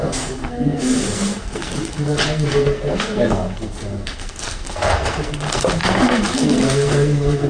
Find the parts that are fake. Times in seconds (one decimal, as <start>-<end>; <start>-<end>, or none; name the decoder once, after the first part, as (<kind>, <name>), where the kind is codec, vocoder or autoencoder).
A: 0.0-7.5 (codec, SNAC)